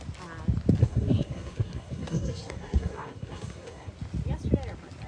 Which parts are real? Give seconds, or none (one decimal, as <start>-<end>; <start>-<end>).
0.0-0.8; 3.9-5.1